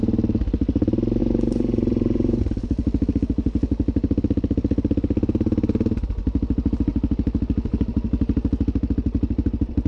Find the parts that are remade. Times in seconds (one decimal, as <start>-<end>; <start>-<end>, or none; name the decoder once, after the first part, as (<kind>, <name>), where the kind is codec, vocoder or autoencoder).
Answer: 1.2-2.4 (vocoder, Vocos)